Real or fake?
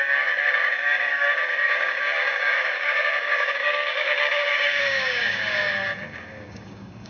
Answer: fake